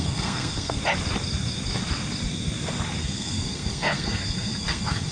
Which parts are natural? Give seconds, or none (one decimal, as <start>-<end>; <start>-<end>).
0.8-3.0